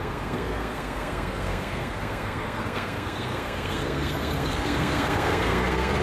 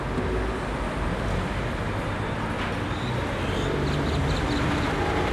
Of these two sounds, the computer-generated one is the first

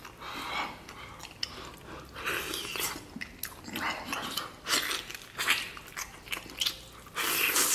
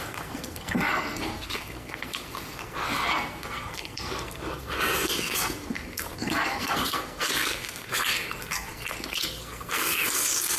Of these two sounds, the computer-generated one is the second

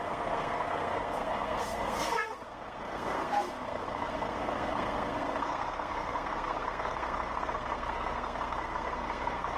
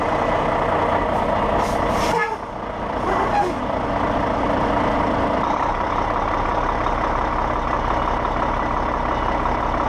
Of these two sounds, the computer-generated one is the first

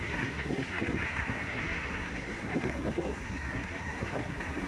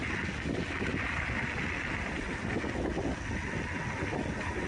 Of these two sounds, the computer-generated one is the first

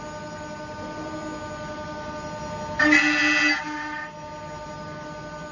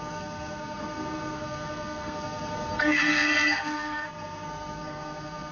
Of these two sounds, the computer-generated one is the second